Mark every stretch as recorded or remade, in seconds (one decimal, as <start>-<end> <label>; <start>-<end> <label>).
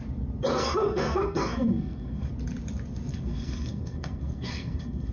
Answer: 0.0-0.5 recorded; 0.5-2.3 remade; 2.3-3.1 recorded; 3.1-5.1 remade